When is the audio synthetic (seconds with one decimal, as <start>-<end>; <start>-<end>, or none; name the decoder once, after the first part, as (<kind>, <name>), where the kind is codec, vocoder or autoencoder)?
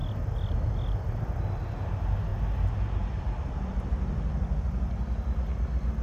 none